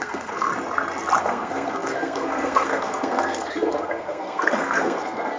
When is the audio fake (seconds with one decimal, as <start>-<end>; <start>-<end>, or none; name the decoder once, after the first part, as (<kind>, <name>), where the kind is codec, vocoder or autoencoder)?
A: 0.0-0.5 (codec, SNAC); 1.2-5.4